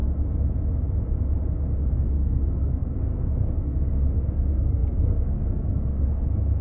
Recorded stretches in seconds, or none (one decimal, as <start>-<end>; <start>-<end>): 0.0-1.9